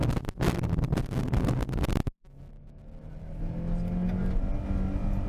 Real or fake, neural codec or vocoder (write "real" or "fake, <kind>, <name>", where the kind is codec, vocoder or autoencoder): real